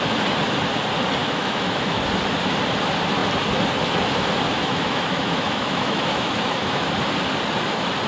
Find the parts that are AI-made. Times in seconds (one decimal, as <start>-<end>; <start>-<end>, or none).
1.2-2.0; 4.6-6.9